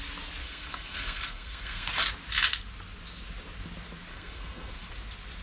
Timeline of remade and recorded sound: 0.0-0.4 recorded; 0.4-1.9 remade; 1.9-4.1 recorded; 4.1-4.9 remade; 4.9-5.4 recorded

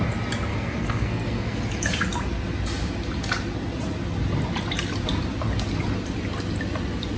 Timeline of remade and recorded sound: 0.0-0.5 recorded; 0.5-1.6 remade; 1.6-7.2 recorded

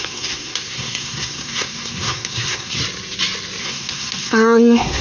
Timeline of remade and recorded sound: 0.0-2.8 remade; 2.8-3.6 recorded; 3.6-5.0 remade

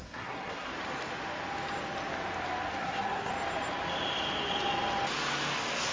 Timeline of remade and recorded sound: 0.0-0.7 remade; 0.7-2.8 recorded; 2.8-3.3 remade; 3.3-5.9 recorded

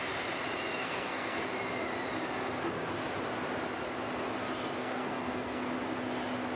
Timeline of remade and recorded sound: 0.0-0.8 recorded; 0.8-1.4 remade; 1.4-4.8 recorded; 4.8-5.7 remade; 5.7-6.6 recorded

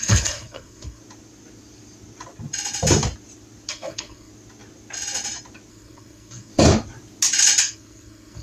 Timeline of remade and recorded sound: 0.0-1.0 remade; 1.0-3.7 recorded; 3.7-4.3 remade; 4.3-5.7 recorded; 5.7-6.5 remade; 6.5-7.6 recorded; 7.6-8.4 remade

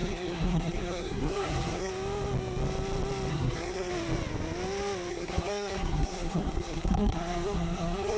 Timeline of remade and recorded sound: 0.0-1.9 remade; 1.9-3.3 recorded; 3.3-3.9 remade; 3.9-5.1 recorded; 5.1-8.2 remade

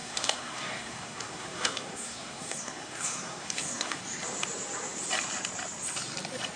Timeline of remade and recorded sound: 0.0-4.0 remade; 4.0-6.6 recorded